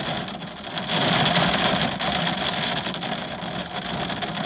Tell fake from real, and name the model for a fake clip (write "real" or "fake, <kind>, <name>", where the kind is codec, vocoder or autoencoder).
real